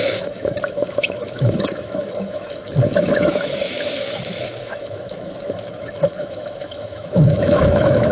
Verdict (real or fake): fake